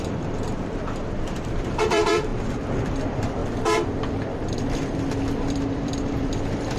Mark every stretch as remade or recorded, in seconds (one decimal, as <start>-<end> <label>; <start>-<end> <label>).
0.0-2.3 remade; 2.3-2.9 recorded; 2.9-3.4 remade; 3.4-4.1 recorded; 4.1-6.8 remade